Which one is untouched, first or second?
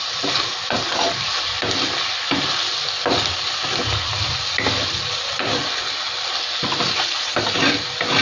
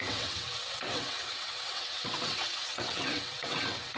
first